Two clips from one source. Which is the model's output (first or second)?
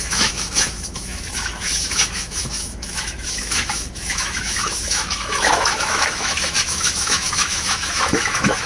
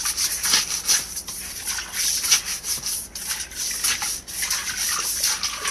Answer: first